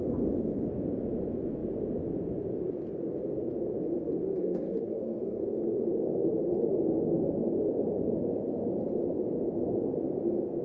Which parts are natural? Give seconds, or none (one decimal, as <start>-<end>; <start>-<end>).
0.0-4.3; 5.4-10.6

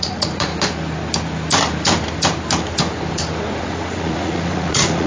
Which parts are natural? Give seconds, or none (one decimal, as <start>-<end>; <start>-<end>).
0.5-3.6

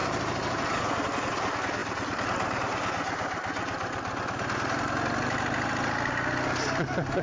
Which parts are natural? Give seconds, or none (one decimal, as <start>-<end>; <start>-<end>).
0.9-7.2

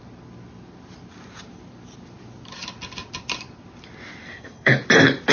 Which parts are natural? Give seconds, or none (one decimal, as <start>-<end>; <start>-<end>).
0.0-4.2; 4.8-5.3

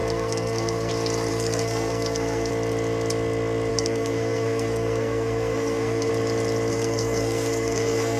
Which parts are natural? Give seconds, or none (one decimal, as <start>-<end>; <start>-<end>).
0.9-1.3; 2.5-3.7; 6.1-6.7

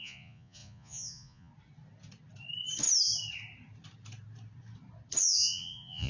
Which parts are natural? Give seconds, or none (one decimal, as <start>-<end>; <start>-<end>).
1.5-5.2